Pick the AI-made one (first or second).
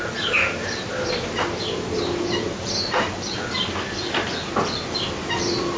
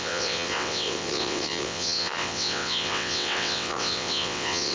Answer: second